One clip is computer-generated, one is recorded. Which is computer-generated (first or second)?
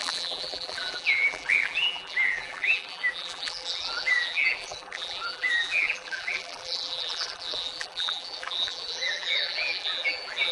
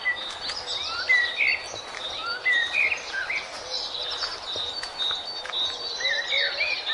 first